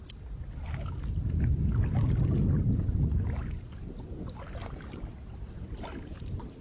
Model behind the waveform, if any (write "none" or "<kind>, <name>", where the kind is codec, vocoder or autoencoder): none